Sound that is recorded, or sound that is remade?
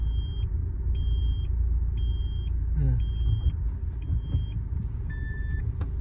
recorded